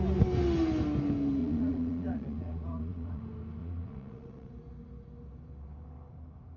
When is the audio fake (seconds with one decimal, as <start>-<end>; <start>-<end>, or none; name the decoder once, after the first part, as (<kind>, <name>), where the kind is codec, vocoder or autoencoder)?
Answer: 1.4-3.2 (vocoder, Vocos); 3.6-4.5